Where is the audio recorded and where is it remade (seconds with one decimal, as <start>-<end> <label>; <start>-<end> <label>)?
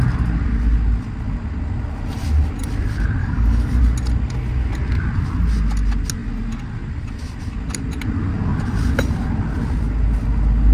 0.0-3.2 recorded; 3.2-3.8 remade; 3.8-10.7 recorded